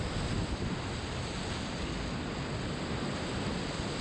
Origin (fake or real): real